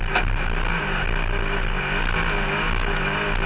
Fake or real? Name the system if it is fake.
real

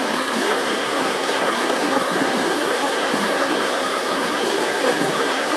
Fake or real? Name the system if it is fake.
fake, codec, SNAC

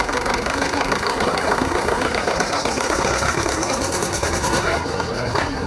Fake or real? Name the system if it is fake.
fake, codec, SNAC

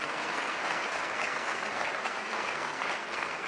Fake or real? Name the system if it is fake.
fake, codec, SNAC